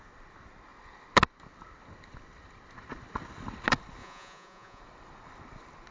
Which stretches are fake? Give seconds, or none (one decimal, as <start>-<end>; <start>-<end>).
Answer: 4.0-4.8